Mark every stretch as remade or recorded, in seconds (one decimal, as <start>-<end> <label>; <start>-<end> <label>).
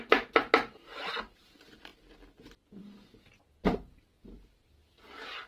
0.0-5.5 recorded